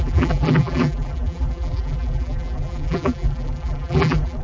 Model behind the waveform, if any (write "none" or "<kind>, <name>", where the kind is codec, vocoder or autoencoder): vocoder, BigVGAN v2